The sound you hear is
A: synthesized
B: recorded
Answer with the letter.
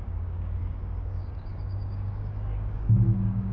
A